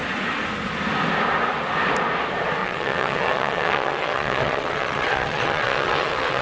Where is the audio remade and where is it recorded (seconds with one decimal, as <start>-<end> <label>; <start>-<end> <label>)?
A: 0.0-2.6 recorded; 2.6-6.4 remade